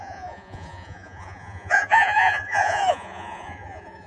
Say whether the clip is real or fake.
fake